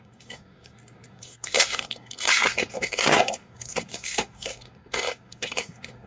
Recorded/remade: remade